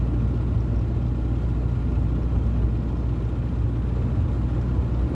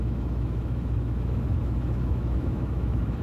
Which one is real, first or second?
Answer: first